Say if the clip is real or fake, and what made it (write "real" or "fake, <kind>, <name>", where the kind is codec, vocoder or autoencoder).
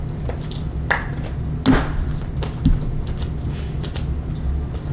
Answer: real